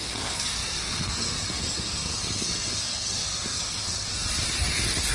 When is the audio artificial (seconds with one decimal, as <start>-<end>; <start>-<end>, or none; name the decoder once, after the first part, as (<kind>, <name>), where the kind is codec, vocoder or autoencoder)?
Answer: 0.0-4.1 (codec, SNAC)